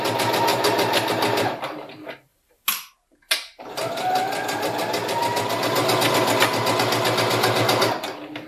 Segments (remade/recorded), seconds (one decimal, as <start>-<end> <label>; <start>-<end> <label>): 0.0-0.5 recorded; 0.5-1.9 remade; 1.9-8.5 recorded